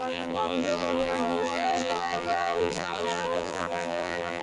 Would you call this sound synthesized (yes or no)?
yes